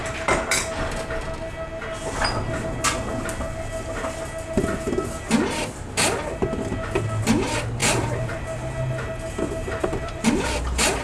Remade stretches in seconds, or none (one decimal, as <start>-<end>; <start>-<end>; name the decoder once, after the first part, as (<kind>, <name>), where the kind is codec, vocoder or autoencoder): 7.8-8.7 (vocoder, BigVGAN v2); 9.6-10.6